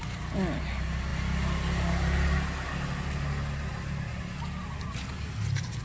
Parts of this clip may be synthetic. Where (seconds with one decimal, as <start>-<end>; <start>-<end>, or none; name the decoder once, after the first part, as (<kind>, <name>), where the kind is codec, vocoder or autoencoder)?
none